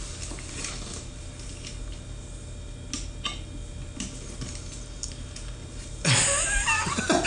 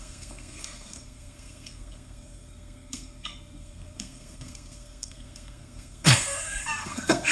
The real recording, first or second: first